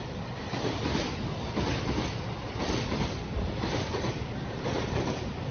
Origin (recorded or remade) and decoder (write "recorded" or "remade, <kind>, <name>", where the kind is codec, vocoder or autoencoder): recorded